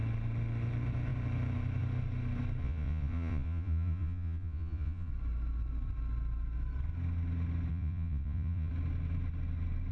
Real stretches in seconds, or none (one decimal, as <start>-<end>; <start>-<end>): 0.0-2.6; 5.1-7.7; 8.7-9.9